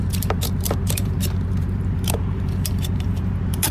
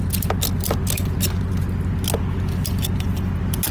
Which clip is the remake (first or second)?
first